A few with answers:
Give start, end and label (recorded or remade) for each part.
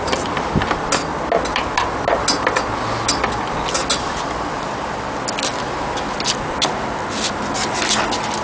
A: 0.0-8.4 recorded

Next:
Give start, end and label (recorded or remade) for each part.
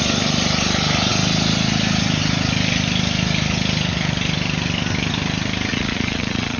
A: 0.0-5.7 recorded; 5.7-6.6 remade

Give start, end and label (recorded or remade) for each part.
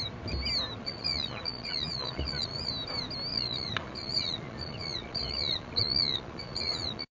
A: 0.0-0.8 recorded; 0.8-2.7 remade; 2.7-3.3 recorded; 3.3-7.1 remade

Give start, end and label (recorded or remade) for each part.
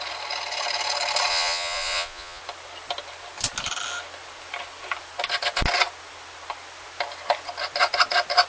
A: 0.0-1.3 recorded; 1.3-2.4 remade; 2.4-8.5 recorded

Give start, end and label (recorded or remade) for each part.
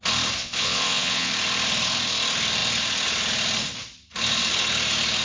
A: 0.0-0.4 recorded; 0.4-1.3 remade; 1.3-5.2 recorded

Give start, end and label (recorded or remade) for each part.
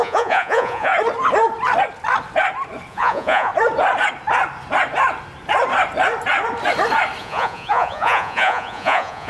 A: 0.0-0.9 remade; 0.9-2.9 recorded; 2.9-3.5 remade; 3.5-7.2 recorded; 7.2-9.3 remade